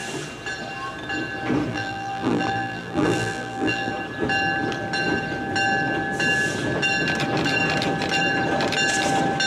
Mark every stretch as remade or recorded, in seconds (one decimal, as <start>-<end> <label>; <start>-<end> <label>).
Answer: 0.0-1.7 recorded; 1.7-3.9 remade; 3.9-9.5 recorded